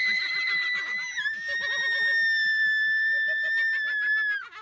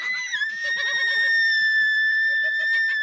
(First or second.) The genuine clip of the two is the first